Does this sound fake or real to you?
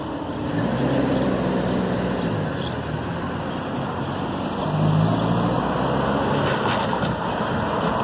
real